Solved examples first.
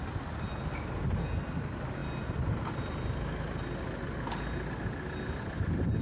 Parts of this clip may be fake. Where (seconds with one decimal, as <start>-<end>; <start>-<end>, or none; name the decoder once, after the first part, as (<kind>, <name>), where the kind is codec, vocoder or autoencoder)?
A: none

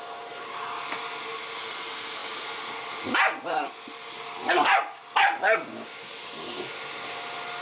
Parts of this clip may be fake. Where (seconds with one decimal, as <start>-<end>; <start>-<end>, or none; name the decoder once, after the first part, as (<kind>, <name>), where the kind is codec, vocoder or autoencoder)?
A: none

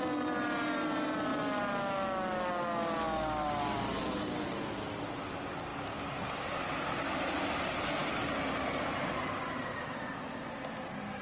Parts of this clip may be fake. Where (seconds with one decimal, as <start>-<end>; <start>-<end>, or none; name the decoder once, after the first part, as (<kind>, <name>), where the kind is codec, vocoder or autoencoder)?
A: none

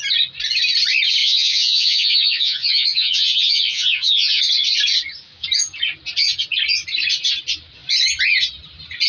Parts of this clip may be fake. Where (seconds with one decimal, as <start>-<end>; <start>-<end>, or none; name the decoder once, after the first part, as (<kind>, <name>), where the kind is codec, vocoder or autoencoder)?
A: 1.2-4.4 (vocoder, Vocos)